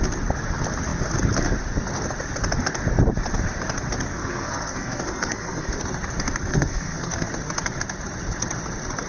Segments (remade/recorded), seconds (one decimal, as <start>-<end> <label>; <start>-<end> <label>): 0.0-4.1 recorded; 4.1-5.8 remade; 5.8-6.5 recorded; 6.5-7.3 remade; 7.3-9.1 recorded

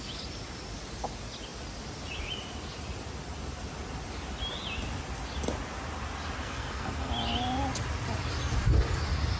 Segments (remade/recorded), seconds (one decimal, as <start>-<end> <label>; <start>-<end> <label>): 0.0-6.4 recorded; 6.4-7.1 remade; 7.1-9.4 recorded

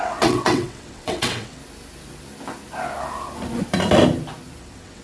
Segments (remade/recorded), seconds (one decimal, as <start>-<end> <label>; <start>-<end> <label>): 0.0-1.6 remade; 1.6-4.6 recorded; 4.6-5.0 remade

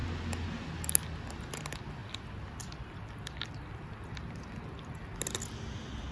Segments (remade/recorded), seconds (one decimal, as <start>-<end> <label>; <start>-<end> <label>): 0.0-6.1 recorded

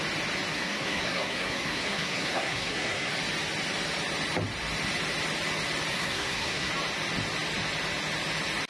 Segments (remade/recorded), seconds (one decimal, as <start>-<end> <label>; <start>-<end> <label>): 0.0-0.5 recorded; 0.5-3.1 remade; 3.1-5.9 recorded; 5.9-6.7 remade; 6.7-8.7 recorded